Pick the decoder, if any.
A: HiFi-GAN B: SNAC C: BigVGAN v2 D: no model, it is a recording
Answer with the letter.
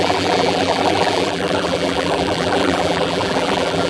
C